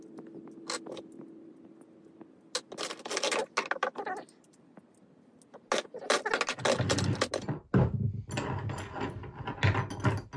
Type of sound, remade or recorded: recorded